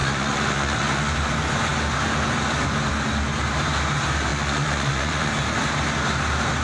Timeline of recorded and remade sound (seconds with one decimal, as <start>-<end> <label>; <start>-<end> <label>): 0.0-1.1 remade; 1.1-4.3 recorded; 4.3-5.3 remade; 5.3-6.6 recorded